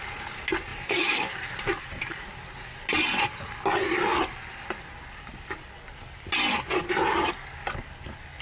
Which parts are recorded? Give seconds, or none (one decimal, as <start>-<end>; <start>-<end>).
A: 0.0-0.7; 2.3-8.4